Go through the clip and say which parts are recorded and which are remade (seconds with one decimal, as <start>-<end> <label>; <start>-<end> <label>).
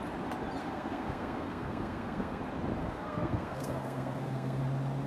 0.0-0.6 recorded; 0.6-2.4 remade; 2.4-2.8 recorded; 2.8-4.6 remade; 4.6-5.1 recorded